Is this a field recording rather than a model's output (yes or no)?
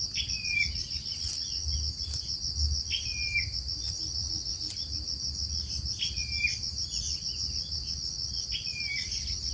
yes